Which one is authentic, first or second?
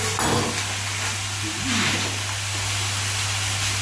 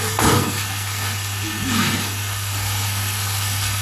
first